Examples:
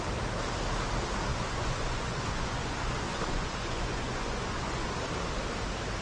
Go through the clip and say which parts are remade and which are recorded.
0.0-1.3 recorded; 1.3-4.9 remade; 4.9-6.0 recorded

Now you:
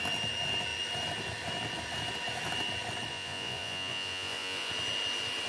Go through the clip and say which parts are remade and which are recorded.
0.0-3.1 recorded; 3.1-4.7 remade; 4.7-5.5 recorded

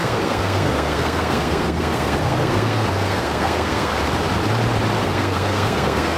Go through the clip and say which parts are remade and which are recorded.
0.0-3.9 remade; 3.9-5.0 recorded; 5.0-6.2 remade

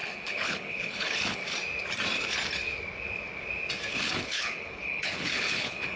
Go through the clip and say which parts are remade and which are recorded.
0.0-1.4 remade; 1.4-3.9 recorded; 3.9-6.0 remade